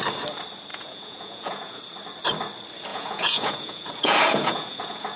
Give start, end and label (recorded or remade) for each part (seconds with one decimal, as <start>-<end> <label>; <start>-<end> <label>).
0.0-0.7 recorded; 0.7-1.8 remade; 1.8-2.9 recorded; 2.9-5.2 remade